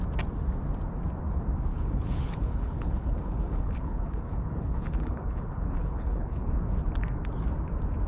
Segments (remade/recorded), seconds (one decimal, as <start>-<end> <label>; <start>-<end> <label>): 0.0-1.7 recorded; 1.7-6.5 remade; 6.5-8.1 recorded